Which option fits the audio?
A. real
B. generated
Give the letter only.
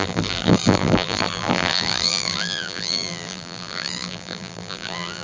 B